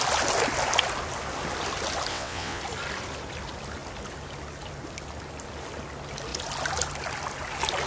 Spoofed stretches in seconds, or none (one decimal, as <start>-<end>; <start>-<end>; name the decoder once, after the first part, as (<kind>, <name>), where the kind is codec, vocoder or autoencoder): 2.1-2.6 (vocoder, WaveNeXt)